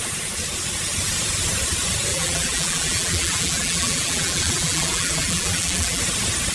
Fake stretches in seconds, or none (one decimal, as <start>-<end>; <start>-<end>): 2.1-6.0

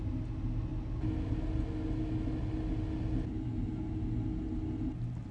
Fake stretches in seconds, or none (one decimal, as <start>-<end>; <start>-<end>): none